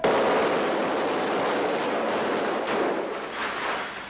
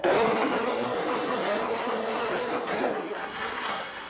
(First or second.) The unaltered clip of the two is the first